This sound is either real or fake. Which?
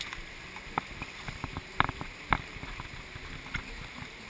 real